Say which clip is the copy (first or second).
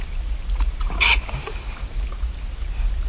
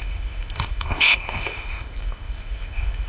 second